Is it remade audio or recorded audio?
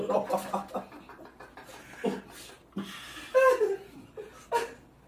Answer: recorded